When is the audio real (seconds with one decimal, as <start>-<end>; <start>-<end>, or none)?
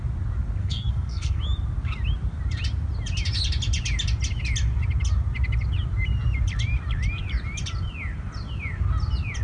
0.0-0.6; 1.4-9.4